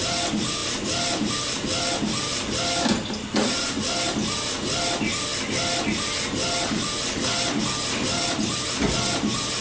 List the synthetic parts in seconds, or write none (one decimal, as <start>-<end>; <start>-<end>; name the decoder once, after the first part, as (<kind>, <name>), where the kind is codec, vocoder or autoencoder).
none